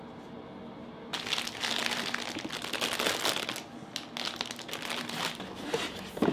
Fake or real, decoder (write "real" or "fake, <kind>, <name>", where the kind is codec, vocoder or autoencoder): real